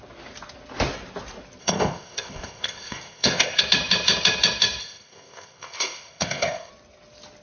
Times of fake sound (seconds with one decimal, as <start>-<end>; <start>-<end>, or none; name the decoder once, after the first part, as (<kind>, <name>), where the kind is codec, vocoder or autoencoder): 1.6-3.6 (codec, ZipCodec); 4.8-6.7